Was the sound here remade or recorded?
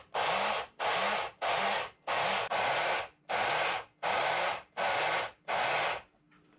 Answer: recorded